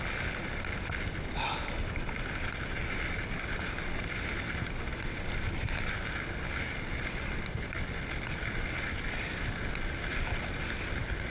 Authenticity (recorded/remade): recorded